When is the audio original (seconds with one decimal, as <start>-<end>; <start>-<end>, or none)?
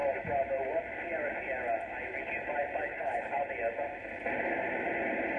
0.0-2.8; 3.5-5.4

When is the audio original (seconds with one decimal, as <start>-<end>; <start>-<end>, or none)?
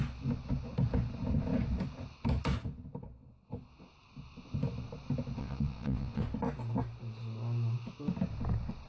0.0-5.4; 6.2-8.9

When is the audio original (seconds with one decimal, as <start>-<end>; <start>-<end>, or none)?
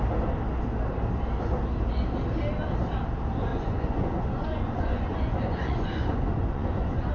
0.0-3.5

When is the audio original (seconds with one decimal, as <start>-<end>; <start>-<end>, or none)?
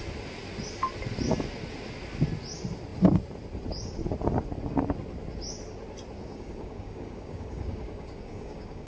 0.0-6.2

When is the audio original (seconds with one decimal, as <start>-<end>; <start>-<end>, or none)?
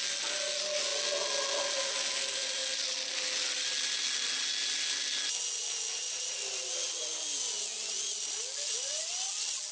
0.0-9.7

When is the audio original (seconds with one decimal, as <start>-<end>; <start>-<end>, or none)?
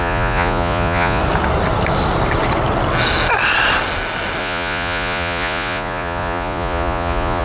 1.2-4.4